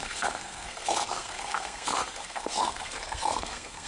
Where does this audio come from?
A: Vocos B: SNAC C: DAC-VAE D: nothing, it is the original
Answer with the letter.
B